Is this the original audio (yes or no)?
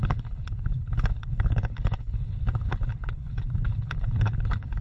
no